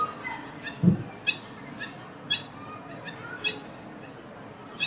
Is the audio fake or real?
real